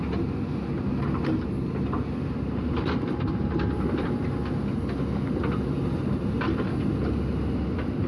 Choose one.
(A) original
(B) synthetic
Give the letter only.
A